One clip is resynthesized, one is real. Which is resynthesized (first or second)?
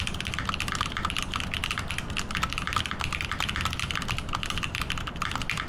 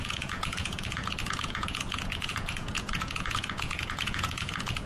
second